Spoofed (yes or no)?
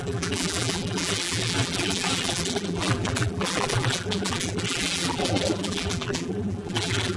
yes